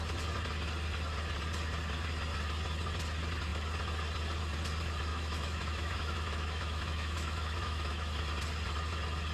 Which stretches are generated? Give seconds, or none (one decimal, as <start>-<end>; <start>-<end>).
5.1-8.2